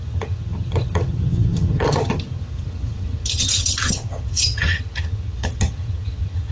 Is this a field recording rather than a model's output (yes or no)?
no